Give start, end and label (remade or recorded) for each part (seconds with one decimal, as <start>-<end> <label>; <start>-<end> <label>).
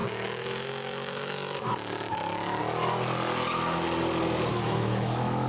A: 0.0-2.6 remade; 2.6-4.5 recorded; 4.5-5.5 remade